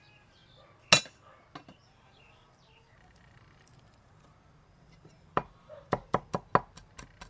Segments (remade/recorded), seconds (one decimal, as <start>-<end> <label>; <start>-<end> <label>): 0.0-1.8 recorded; 1.8-6.2 remade; 6.2-7.3 recorded